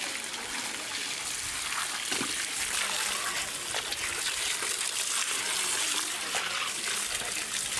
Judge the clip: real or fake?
real